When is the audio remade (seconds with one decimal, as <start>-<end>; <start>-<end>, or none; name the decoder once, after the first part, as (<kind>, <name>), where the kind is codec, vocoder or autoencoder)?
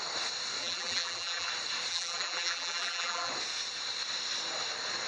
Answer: 0.6-1.5 (vocoder, BigVGAN v2); 1.9-3.3